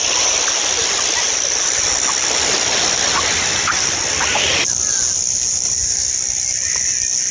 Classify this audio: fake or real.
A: real